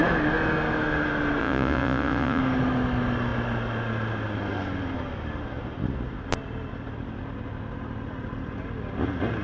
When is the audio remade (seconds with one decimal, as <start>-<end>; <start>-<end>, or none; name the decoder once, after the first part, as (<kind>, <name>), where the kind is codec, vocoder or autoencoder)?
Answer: 1.4-2.4 (vocoder, Vocos)